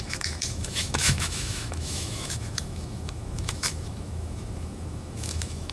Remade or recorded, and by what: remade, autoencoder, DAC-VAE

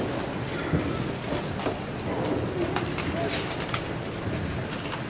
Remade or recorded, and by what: recorded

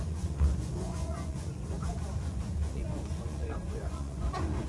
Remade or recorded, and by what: remade, vocoder, Vocos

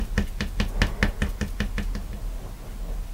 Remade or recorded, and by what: recorded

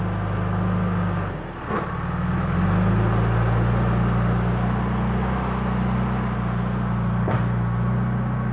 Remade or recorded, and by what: recorded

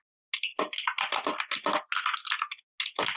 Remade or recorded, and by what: recorded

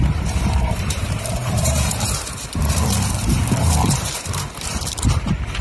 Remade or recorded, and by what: remade, vocoder, BigVGAN v2